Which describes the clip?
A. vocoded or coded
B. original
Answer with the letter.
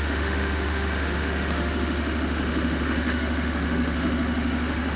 A